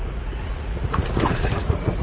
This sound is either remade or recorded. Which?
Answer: remade